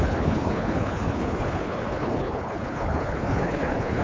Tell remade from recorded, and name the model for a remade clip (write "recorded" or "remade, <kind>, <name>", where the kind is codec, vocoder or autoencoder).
remade, codec, HILCodec